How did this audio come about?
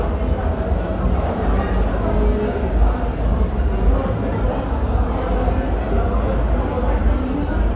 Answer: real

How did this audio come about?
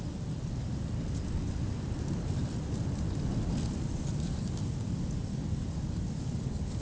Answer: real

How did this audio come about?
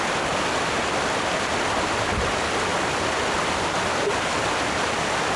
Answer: real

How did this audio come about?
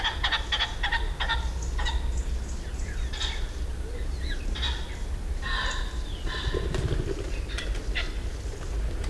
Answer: real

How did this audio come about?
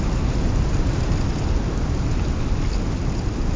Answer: real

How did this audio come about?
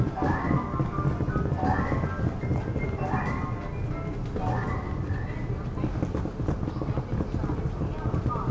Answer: real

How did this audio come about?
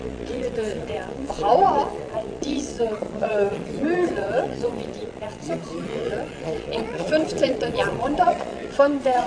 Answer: fake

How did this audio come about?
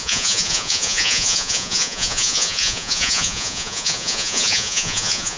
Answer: fake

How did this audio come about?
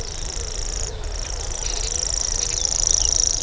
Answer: real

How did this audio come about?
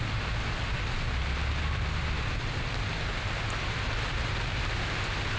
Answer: real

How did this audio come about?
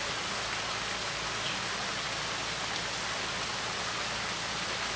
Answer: real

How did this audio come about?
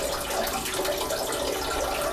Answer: real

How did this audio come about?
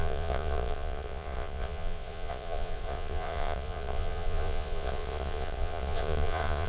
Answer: fake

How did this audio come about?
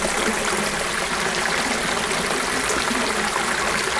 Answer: real